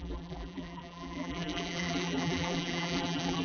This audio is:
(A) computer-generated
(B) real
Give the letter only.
A